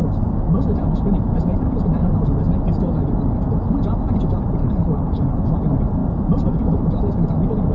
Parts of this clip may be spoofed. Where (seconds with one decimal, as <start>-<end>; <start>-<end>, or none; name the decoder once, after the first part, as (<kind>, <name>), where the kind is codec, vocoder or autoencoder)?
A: 4.6-5.4 (codec, HILCodec)